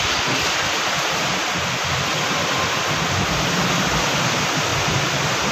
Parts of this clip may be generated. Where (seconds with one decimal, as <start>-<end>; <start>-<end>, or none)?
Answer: none